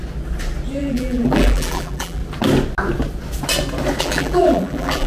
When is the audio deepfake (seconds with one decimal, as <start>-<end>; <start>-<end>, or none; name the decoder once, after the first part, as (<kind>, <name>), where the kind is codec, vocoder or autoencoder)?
0.8-2.2 (vocoder, BigVGAN v2); 4.0-5.1